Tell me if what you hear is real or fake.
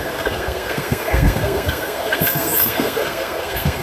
fake